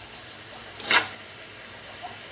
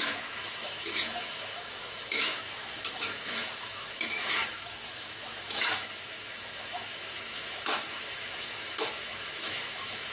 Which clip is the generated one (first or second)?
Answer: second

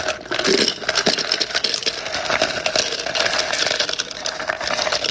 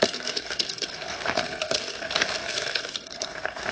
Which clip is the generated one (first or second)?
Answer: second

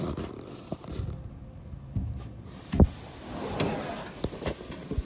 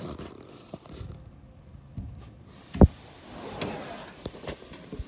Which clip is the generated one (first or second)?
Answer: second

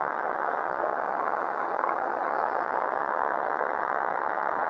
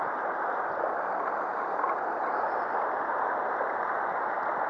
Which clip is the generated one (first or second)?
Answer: first